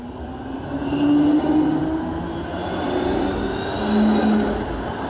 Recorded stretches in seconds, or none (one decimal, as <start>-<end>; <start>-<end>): 0.0-5.1